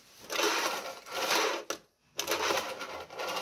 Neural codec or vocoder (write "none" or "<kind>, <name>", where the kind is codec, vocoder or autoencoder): none